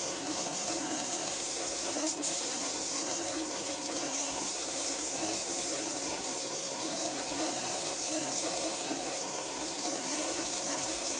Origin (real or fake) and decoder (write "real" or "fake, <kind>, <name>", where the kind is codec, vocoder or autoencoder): fake, codec, SNAC